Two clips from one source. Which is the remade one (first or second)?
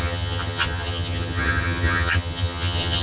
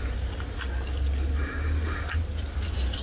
first